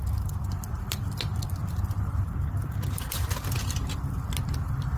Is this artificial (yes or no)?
no